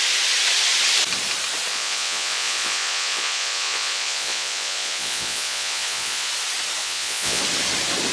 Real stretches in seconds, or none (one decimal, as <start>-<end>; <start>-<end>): 0.0-1.7; 6.3-6.8; 7.4-8.1